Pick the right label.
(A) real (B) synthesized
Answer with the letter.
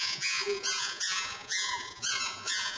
B